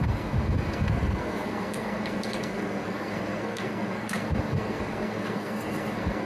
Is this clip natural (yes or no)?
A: no